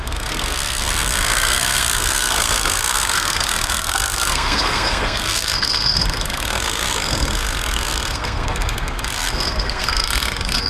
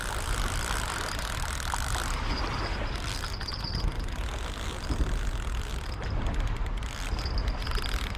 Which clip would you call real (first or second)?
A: second